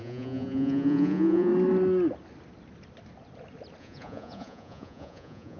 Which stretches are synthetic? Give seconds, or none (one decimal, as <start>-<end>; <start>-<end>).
0.0-1.5; 3.8-5.6